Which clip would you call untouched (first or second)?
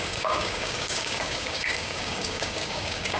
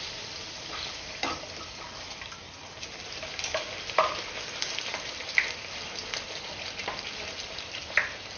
second